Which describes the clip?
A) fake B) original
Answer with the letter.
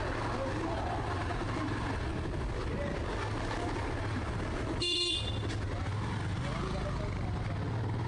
B